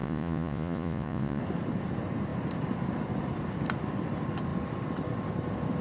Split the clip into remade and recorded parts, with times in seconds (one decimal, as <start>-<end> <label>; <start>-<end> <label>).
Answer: 0.0-1.4 remade; 1.4-5.8 recorded